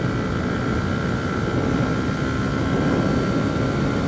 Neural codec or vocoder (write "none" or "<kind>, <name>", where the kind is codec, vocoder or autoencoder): none